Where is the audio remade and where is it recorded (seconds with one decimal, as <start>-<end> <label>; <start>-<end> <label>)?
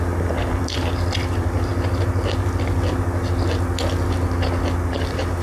0.0-1.7 remade; 1.7-4.9 recorded; 4.9-5.4 remade